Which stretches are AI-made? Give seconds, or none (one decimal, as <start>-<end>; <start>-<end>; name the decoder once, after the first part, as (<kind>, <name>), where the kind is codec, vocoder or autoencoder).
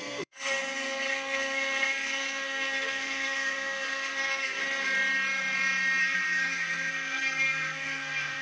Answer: 0.0-4.6 (codec, SNAC); 6.0-8.4